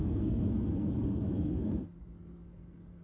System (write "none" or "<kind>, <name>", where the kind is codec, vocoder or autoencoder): codec, SNAC